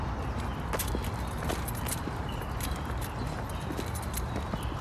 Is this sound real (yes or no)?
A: yes